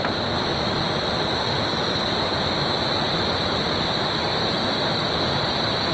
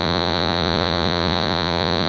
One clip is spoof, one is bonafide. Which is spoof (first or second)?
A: second